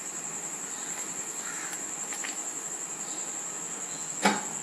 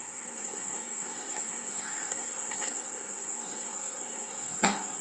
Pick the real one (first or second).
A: first